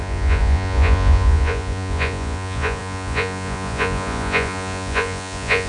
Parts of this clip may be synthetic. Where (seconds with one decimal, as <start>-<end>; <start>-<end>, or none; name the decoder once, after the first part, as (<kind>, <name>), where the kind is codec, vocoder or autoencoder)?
0.0-5.7 (vocoder, Vocos)